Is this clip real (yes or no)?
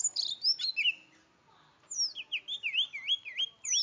yes